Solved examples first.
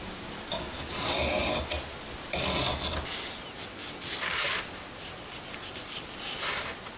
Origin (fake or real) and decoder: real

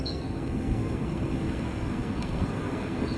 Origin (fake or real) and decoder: fake, codec, SNAC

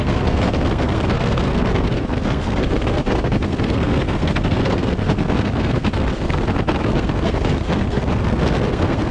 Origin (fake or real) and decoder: fake, codec, SNAC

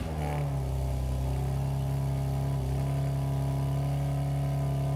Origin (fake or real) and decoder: real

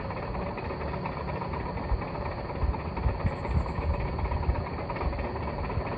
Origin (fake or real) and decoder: real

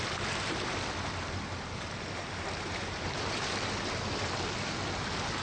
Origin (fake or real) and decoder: real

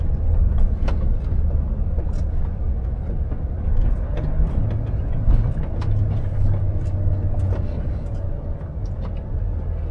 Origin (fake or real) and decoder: real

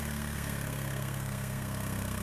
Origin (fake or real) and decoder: fake, codec, SNAC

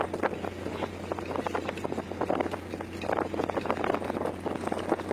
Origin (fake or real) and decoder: real